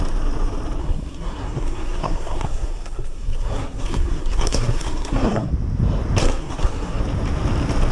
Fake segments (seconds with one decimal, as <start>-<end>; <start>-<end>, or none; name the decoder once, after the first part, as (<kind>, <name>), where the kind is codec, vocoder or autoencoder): 0.8-5.5 (codec, SNAC); 6.2-7.0